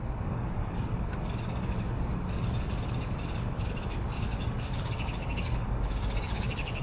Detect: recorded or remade remade